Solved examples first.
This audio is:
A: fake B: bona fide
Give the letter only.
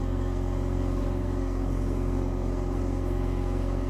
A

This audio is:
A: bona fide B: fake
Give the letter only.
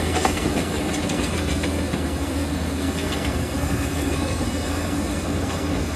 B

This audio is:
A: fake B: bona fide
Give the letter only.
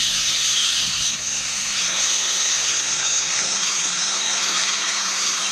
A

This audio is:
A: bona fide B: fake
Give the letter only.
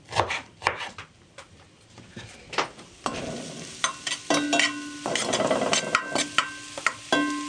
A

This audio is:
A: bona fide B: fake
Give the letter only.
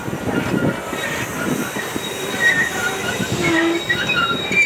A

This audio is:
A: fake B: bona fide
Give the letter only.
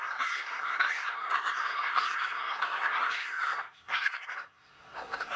A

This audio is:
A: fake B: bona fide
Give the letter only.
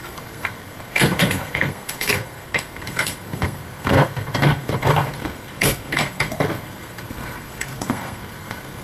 A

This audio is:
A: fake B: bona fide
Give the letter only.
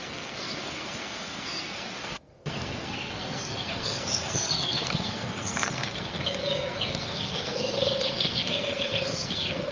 A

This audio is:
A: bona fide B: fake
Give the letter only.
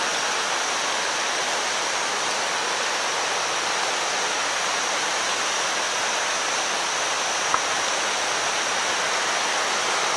A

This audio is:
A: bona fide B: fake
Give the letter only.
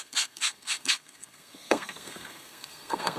B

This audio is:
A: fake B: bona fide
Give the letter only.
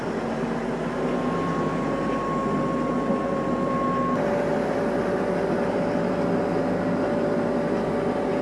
B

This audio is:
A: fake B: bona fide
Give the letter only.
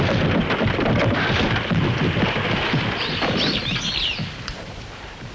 B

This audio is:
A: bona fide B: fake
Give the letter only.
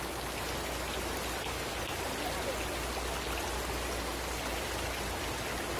A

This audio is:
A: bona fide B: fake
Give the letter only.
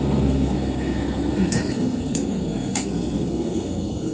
B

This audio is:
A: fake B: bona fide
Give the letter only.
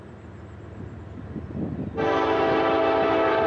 B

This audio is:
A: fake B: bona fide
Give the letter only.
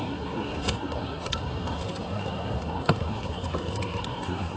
A